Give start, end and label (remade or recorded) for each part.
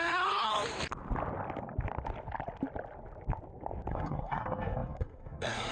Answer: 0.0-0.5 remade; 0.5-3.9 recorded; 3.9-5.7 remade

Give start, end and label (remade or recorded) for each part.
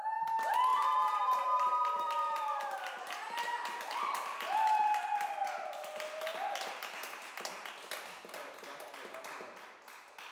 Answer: 0.0-0.7 recorded; 0.7-4.0 remade; 4.0-6.3 recorded; 6.3-7.3 remade; 7.3-10.3 recorded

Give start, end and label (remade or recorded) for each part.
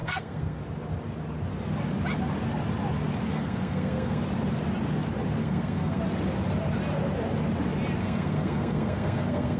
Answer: 0.0-0.6 remade; 0.6-3.3 recorded; 3.3-4.2 remade; 4.2-5.4 recorded; 5.4-6.0 remade; 6.0-8.0 recorded; 8.0-9.6 remade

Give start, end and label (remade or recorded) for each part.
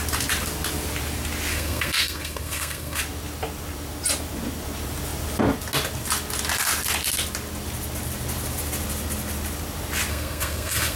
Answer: 0.0-1.5 recorded; 1.5-3.0 remade; 3.0-10.1 recorded; 10.1-11.0 remade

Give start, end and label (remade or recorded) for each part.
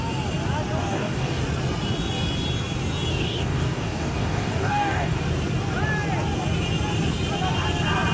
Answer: 0.0-0.8 recorded; 0.8-1.4 remade; 1.4-3.1 recorded; 3.1-5.2 remade; 5.2-8.1 recorded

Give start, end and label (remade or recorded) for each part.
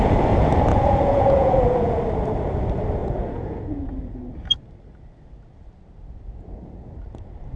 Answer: 0.0-0.7 recorded; 0.7-2.0 remade; 2.0-3.0 recorded; 3.0-3.6 remade; 3.6-7.6 recorded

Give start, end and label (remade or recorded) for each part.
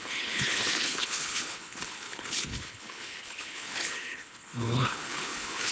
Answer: 0.0-5.7 remade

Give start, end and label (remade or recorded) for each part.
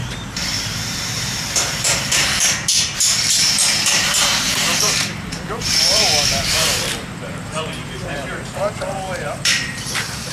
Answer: 0.0-10.3 remade